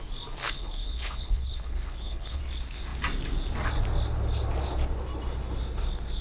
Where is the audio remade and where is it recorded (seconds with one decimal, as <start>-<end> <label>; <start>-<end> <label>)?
0.0-0.4 recorded; 0.4-2.4 remade; 2.4-6.2 recorded